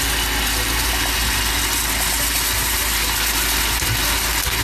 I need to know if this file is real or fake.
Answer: real